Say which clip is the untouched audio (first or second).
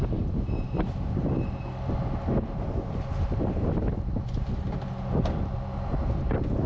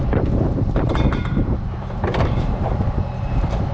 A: first